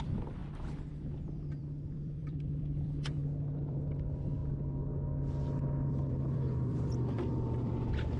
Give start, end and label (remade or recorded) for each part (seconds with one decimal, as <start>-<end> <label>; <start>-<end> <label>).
0.0-0.4 remade; 0.4-0.9 recorded; 0.9-3.2 remade; 3.2-3.7 recorded; 3.7-4.4 remade; 4.4-5.9 recorded; 5.9-8.2 remade